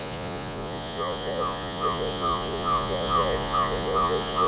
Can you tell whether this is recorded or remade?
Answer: remade